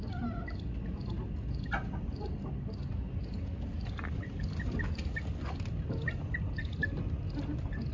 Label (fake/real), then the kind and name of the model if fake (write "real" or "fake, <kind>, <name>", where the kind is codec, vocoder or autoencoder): real